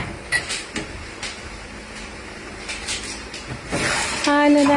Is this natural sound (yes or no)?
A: yes